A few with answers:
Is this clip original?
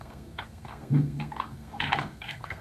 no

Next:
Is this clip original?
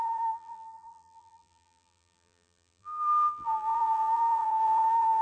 no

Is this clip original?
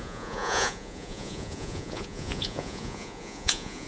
no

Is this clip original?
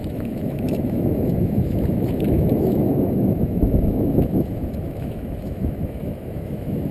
no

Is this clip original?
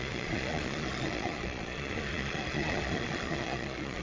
no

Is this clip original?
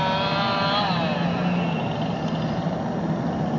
yes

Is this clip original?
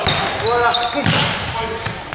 yes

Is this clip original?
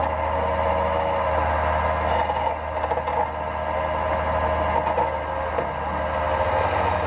yes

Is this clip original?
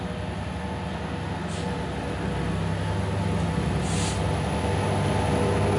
yes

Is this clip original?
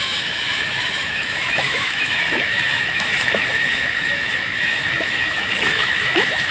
no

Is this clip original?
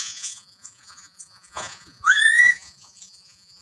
no